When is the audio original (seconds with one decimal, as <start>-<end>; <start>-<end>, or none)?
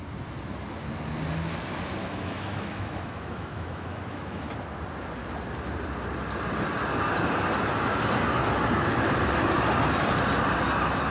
0.0-2.0; 4.5-11.1